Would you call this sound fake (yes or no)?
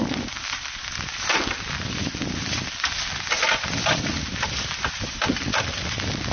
no